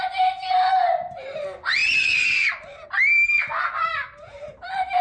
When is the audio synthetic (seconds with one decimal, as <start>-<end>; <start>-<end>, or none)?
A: none